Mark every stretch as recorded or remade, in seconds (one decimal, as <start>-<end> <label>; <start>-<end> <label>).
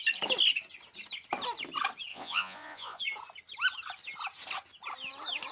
0.0-2.1 recorded; 2.1-3.0 remade; 3.0-5.5 recorded